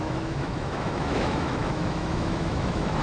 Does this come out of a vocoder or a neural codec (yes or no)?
yes